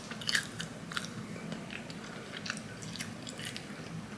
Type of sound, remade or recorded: recorded